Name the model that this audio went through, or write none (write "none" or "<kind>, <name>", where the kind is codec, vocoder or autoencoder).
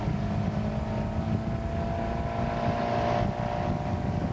none